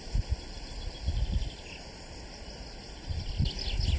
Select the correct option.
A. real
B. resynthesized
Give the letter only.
A